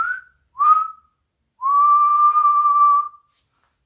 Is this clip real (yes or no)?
yes